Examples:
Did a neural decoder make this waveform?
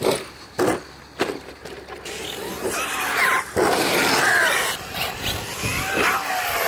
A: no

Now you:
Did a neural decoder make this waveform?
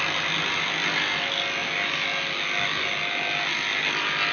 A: no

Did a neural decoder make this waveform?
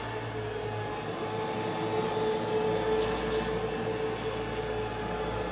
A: no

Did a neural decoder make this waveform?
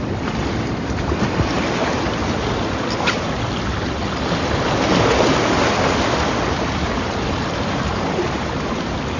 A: no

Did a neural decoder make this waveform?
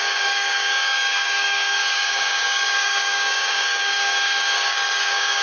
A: yes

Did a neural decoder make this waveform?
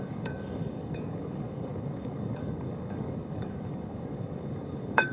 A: yes